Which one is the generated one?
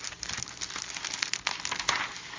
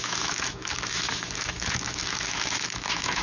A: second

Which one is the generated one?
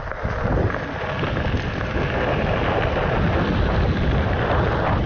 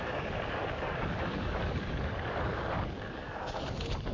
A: second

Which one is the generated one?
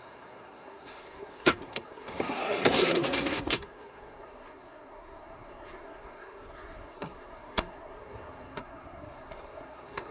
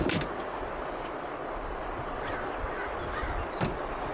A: first